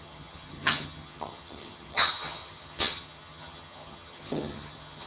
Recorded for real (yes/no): no